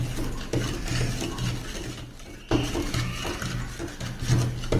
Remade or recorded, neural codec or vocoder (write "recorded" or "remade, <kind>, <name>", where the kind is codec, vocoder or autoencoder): recorded